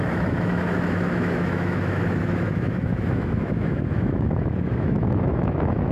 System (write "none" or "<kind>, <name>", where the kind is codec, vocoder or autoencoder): autoencoder, DAC-VAE